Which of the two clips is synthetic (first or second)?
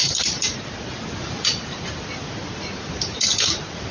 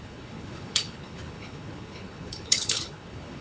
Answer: second